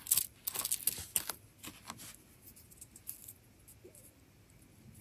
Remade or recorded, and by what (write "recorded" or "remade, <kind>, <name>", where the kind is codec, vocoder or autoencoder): recorded